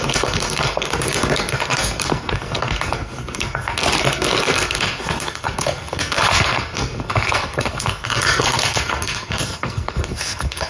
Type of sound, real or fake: fake